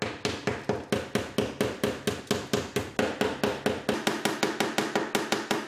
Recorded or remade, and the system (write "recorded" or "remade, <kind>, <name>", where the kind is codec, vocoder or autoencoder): recorded